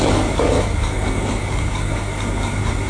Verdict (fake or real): fake